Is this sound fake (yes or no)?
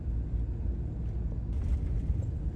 no